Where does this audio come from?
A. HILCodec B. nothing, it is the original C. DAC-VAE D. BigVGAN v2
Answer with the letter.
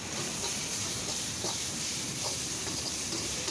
D